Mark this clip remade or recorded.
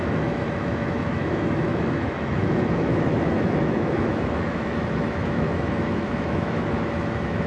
remade